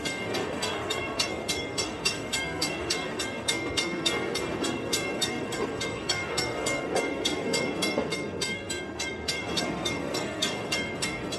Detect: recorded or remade remade